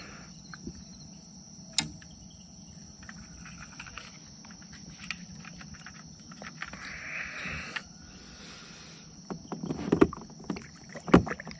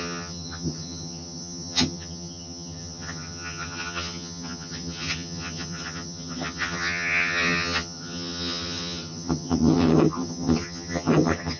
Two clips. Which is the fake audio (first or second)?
second